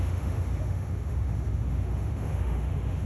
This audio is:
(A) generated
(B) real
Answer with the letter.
A